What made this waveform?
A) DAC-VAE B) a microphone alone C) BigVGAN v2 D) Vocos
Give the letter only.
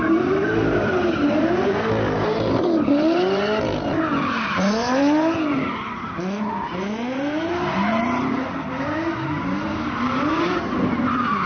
C